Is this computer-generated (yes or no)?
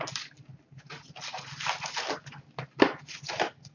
no